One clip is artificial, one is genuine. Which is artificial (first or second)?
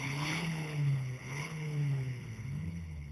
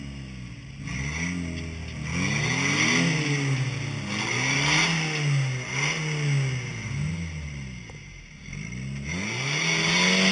first